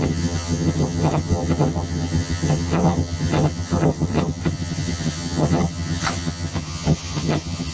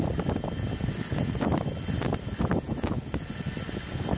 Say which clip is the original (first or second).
second